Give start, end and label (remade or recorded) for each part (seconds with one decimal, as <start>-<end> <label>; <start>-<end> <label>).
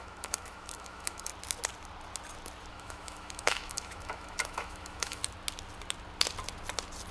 0.0-1.3 remade; 1.3-2.7 recorded; 2.7-5.2 remade; 5.2-7.1 recorded